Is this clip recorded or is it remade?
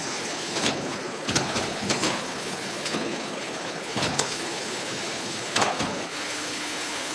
remade